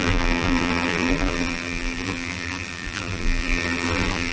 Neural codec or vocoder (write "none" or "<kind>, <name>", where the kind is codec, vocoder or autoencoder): vocoder, BigVGAN v2